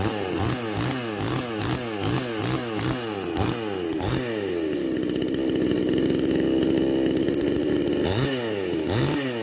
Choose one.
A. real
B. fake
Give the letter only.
A